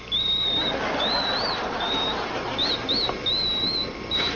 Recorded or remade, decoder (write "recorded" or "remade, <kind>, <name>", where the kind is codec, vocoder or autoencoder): recorded